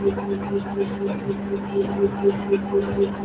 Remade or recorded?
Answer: recorded